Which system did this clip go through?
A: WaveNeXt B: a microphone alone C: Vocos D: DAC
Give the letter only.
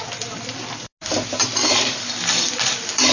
B